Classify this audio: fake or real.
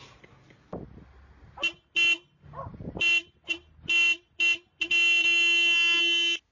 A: real